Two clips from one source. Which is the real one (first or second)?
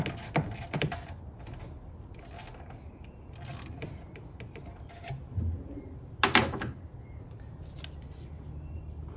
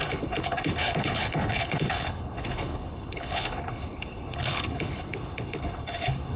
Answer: first